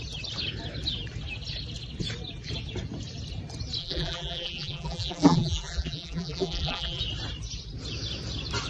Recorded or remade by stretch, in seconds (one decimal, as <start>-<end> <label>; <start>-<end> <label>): 0.0-3.8 recorded; 3.8-7.0 remade; 7.0-8.7 recorded